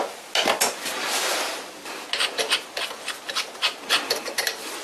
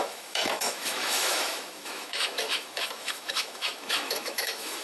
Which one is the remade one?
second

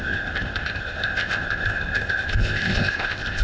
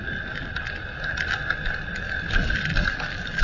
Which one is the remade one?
first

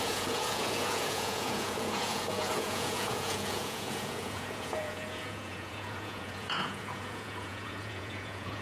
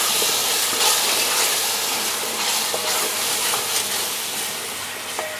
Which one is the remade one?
first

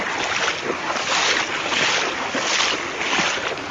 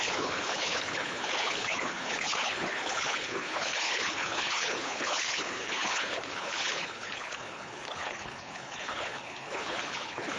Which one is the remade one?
second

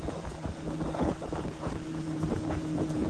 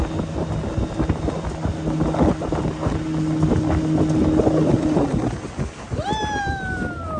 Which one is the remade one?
first